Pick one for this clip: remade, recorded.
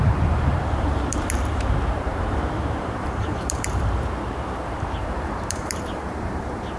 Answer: remade